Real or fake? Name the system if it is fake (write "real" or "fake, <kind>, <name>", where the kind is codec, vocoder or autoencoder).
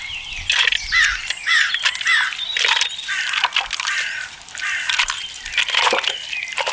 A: real